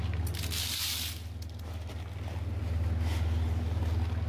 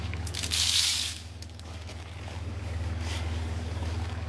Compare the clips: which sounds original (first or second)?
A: first